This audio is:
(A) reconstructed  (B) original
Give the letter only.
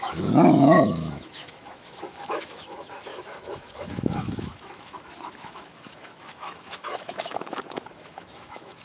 A